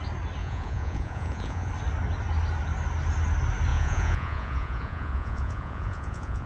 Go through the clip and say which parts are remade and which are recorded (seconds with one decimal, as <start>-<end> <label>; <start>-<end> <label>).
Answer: 0.0-0.4 recorded; 0.4-1.7 remade; 1.7-3.7 recorded; 3.7-6.5 remade